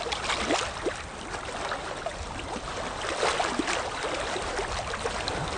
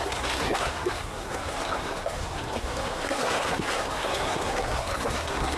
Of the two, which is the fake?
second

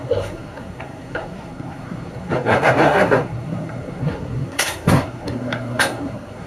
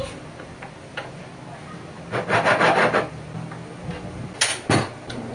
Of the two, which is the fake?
first